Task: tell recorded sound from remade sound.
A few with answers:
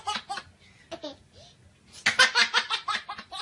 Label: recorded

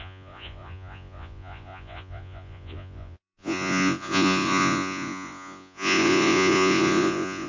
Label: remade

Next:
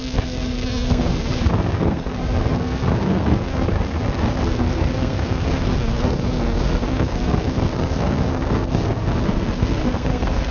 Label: remade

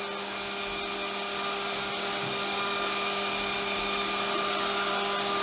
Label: recorded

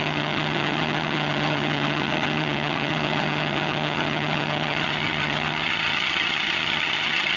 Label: remade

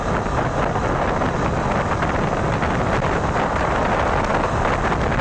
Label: recorded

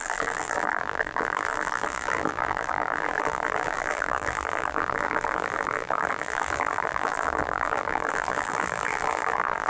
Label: remade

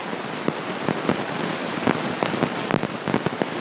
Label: recorded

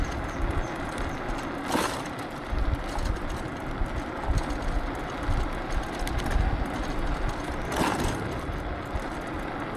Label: recorded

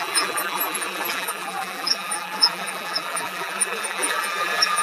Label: remade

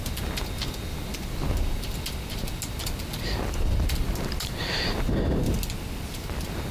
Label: recorded